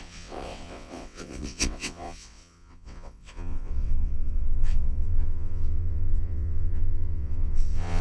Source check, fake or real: fake